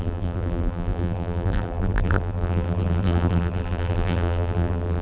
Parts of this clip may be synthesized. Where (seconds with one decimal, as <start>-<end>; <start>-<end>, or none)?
0.0-5.0